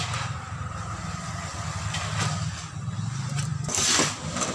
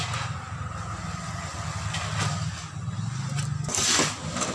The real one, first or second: second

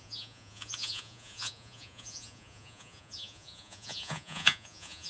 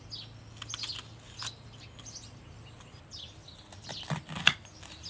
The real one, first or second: second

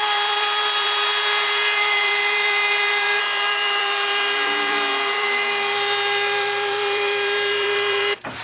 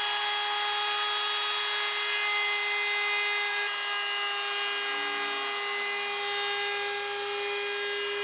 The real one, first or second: second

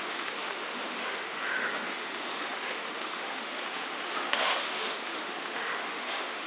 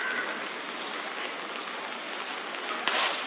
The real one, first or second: second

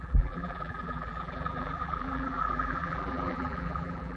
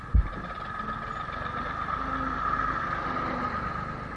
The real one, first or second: second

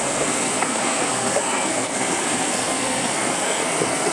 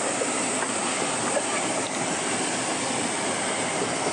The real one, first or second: second